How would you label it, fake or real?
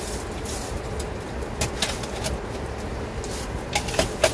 real